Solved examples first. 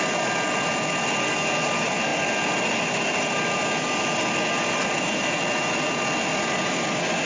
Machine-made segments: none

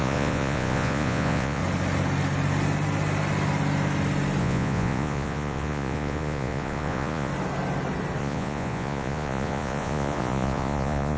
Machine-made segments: 0.0-1.6 (vocoder, Vocos); 4.4-7.3; 8.2-11.2

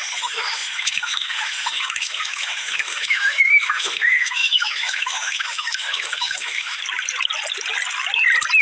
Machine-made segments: 0.0-6.8 (autoencoder, DAC-VAE)

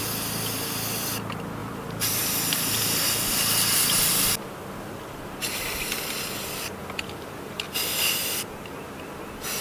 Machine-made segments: 1.6-5.2 (vocoder, BigVGAN v2); 6.8-8.2

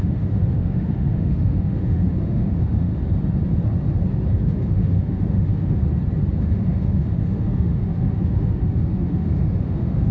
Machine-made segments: 0.0-2.9 (autoencoder, DAC-VAE); 4.3-5.8; 6.4-10.1